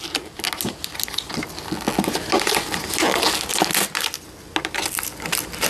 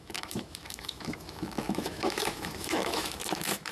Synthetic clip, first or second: second